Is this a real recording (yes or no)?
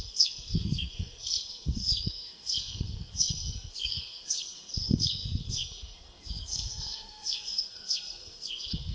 no